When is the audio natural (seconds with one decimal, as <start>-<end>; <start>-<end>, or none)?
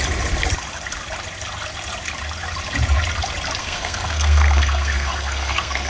0.0-3.6